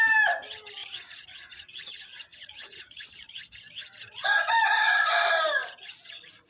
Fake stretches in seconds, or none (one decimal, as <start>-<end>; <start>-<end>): 0.8-3.1